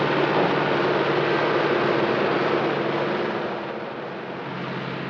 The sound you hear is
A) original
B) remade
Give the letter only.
A